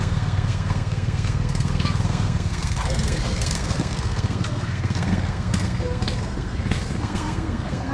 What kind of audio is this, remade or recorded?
remade